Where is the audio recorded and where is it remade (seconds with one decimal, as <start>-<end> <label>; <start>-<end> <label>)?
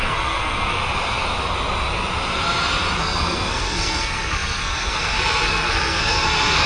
0.0-0.8 remade; 0.8-3.0 recorded; 3.0-6.7 remade